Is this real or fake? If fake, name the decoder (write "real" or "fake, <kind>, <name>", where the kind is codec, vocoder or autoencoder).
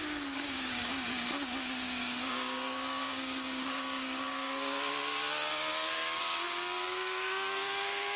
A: fake, codec, DAC